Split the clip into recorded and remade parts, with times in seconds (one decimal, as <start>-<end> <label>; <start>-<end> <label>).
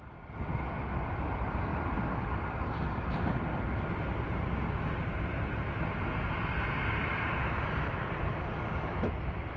0.0-9.6 recorded